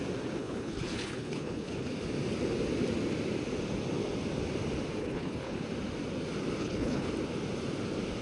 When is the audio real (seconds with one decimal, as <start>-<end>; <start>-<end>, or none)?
0.0-0.4; 1.9-5.0; 5.6-6.6; 7.1-8.2